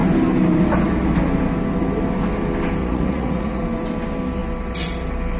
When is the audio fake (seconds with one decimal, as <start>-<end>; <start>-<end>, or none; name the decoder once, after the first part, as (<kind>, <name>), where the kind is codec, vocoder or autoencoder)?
2.8-3.6 (vocoder, Vocos)